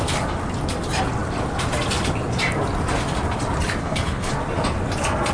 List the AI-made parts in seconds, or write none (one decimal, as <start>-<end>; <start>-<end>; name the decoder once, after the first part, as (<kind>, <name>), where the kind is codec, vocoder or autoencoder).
3.8-4.3 (codec, HILCodec)